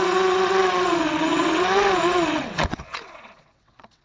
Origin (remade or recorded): remade